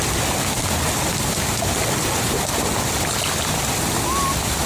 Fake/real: real